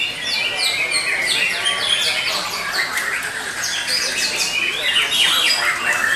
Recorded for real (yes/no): yes